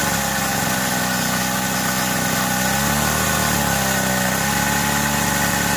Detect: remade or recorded recorded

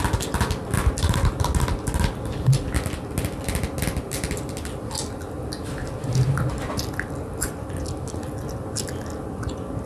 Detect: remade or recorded recorded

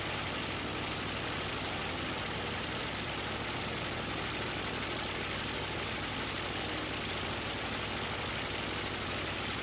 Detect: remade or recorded recorded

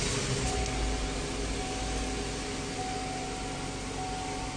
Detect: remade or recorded recorded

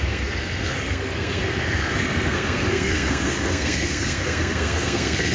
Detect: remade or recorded remade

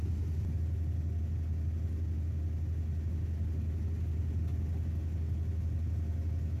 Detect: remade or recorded recorded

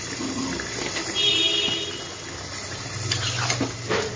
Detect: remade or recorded recorded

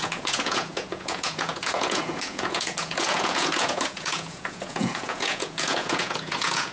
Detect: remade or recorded remade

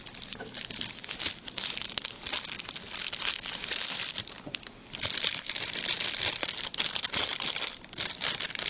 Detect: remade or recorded recorded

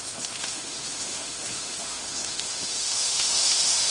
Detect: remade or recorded remade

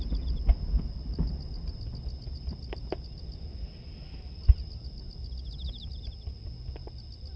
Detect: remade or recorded recorded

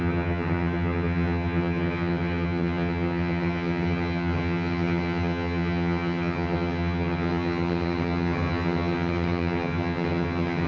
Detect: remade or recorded remade